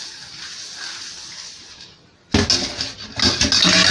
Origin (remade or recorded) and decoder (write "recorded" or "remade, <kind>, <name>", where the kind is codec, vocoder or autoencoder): recorded